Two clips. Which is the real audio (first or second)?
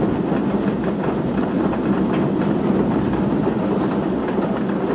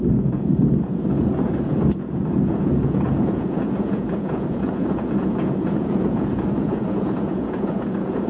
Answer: first